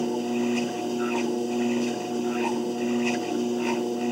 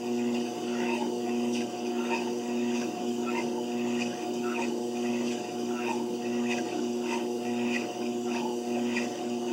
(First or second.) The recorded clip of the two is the first